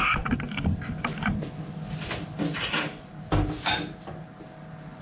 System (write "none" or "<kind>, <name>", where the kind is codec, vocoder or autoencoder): none